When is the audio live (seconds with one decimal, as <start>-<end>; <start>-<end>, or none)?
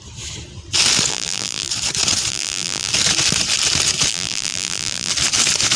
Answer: 0.0-1.1; 1.7-2.3; 2.9-4.1; 5.1-5.8